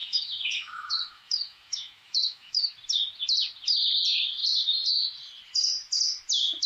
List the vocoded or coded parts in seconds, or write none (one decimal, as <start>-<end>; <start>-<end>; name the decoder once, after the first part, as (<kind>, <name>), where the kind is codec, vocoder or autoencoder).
0.0-2.7 (autoencoder, DAC-VAE)